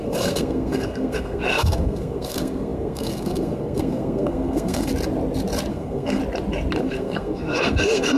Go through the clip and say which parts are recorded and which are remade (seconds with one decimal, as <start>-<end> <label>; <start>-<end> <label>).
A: 0.0-4.9 remade; 4.9-5.7 recorded; 5.7-6.2 remade; 6.2-6.8 recorded; 6.8-8.2 remade